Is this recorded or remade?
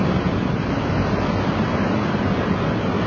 recorded